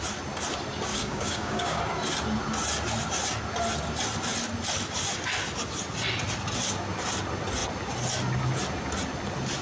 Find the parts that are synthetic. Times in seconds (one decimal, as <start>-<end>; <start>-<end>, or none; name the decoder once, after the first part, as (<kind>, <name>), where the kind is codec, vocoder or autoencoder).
0.9-1.8 (codec, DAC)